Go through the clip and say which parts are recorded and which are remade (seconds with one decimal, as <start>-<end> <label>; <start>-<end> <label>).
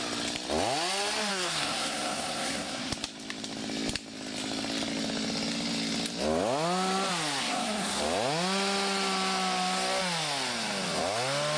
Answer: 0.0-1.3 recorded; 1.3-2.9 remade; 2.9-7.4 recorded; 7.4-8.0 remade; 8.0-11.6 recorded